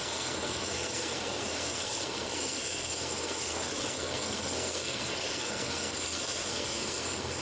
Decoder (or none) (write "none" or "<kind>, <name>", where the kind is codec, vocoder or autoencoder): codec, SNAC